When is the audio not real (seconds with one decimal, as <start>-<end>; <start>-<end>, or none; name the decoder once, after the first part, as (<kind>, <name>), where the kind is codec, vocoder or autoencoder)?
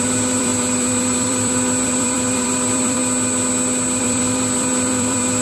0.0-3.0 (vocoder, BigVGAN v2); 4.0-5.4